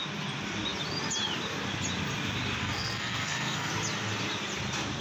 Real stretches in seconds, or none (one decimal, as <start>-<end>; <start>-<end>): 0.0-2.6; 3.7-5.0